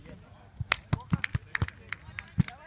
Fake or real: real